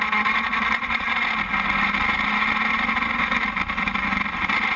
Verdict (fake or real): real